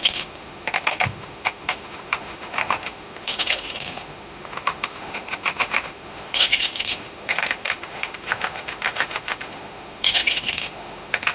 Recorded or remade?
remade